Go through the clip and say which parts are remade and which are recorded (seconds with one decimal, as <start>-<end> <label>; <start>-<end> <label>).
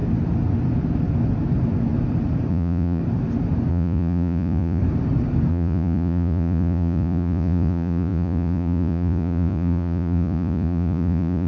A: 0.0-2.5 recorded; 2.5-3.0 remade; 3.0-3.7 recorded; 3.7-4.8 remade; 4.8-5.5 recorded; 5.5-11.5 remade